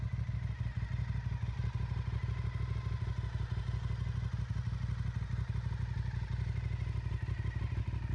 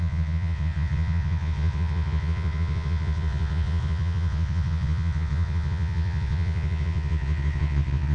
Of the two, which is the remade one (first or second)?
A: second